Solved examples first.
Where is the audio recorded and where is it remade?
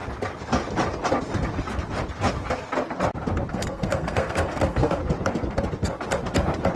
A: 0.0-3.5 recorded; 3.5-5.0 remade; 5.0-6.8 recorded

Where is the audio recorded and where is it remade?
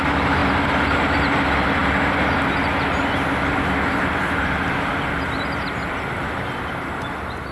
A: 0.0-7.5 recorded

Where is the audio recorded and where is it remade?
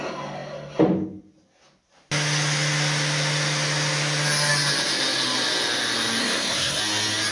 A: 0.0-6.2 recorded; 6.2-6.8 remade; 6.8-7.3 recorded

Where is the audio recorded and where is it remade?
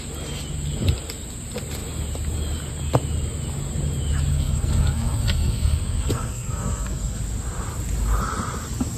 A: 0.0-4.3 recorded; 4.3-7.2 remade; 7.2-9.0 recorded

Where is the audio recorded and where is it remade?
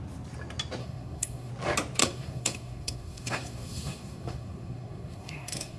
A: 0.0-0.8 recorded; 0.8-1.5 remade; 1.5-2.0 recorded; 2.0-5.8 remade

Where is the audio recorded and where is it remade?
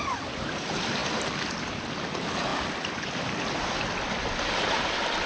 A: 0.0-5.3 recorded